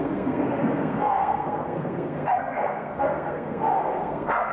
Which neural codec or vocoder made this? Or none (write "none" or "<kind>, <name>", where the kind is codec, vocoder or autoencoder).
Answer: codec, SNAC